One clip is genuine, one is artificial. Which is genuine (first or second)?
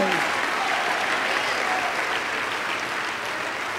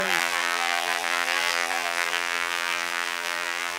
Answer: first